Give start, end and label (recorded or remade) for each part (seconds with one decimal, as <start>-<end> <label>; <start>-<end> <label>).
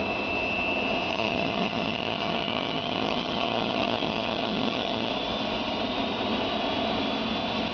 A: 0.0-1.1 recorded; 1.1-5.1 remade; 5.1-7.7 recorded